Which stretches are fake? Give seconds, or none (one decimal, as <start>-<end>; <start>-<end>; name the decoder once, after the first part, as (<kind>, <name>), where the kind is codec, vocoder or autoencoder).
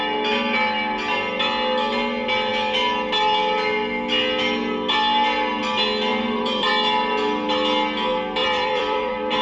6.1-6.7 (vocoder, BigVGAN v2); 8.4-9.4